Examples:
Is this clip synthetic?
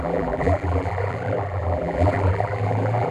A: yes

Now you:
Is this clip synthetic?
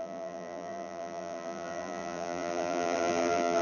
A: yes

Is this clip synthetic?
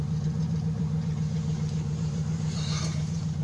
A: yes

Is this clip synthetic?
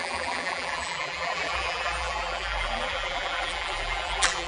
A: yes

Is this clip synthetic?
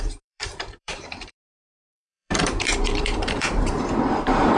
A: yes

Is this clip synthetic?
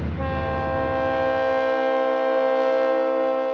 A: no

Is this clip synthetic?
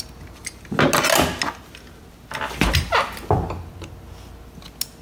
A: no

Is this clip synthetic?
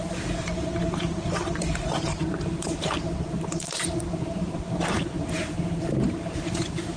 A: yes